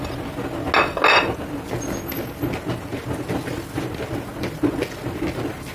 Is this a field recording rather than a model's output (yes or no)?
yes